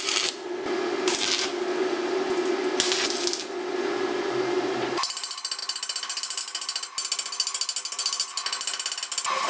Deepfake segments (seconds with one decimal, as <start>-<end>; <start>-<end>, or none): none